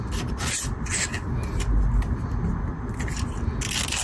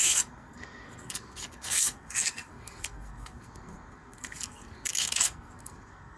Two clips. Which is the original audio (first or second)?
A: first